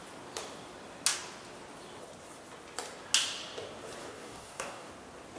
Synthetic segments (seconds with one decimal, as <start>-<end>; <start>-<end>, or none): 4.0-4.9